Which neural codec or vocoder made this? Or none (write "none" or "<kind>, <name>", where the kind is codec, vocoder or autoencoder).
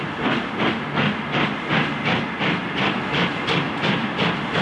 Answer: none